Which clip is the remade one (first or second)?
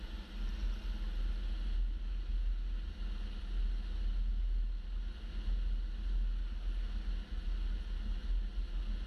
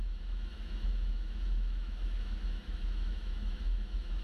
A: second